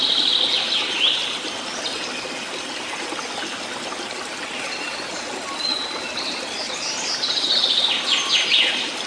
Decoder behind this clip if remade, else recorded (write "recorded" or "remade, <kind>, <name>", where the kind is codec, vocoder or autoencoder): recorded